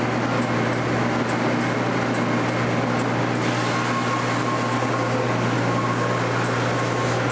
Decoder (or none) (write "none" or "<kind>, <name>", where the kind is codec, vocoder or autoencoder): none